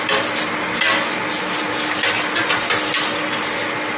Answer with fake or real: real